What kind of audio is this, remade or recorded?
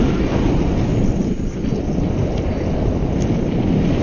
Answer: recorded